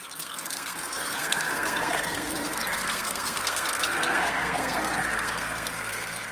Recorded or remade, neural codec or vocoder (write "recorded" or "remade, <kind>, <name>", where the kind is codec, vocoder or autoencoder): remade, codec, SNAC